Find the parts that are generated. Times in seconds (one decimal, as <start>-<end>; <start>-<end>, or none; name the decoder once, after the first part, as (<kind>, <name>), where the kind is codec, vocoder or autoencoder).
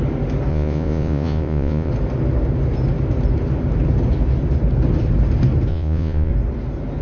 0.5-1.9 (vocoder, Vocos); 5.7-6.3